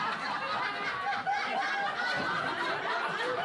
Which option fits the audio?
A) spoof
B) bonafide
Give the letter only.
B